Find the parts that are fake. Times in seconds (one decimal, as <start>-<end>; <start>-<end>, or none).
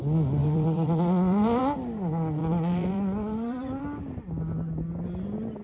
0.4-1.6; 2.4-3.8